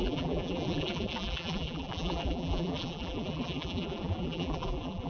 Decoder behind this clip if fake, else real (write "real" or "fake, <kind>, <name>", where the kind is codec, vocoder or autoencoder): fake, vocoder, BigVGAN v2